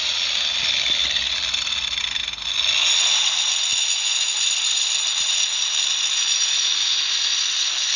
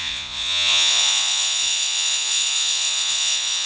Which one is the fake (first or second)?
second